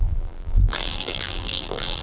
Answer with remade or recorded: remade